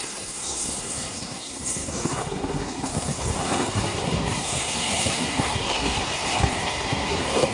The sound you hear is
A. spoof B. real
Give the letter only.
A